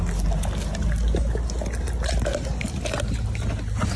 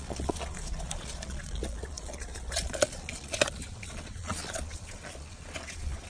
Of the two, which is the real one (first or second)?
first